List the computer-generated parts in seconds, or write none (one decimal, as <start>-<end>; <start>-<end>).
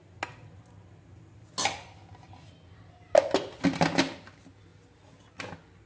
none